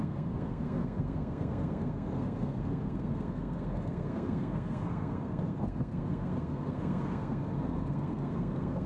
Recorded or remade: remade